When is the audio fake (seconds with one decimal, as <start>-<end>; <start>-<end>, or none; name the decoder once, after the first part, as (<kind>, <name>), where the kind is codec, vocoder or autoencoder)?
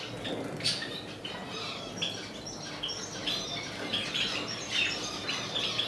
0.8-1.8 (vocoder, BigVGAN v2); 3.2-5.2